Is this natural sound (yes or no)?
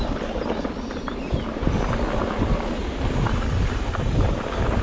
yes